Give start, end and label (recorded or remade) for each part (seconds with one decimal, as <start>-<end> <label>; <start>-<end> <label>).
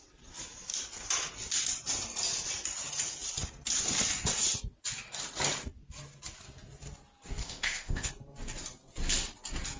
0.0-7.4 recorded; 7.4-8.1 remade; 8.1-9.8 recorded